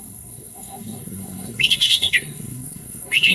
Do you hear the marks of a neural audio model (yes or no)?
yes